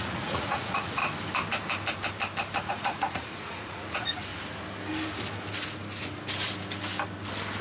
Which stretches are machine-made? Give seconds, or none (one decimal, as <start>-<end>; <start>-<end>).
0.0-1.0; 2.7-4.3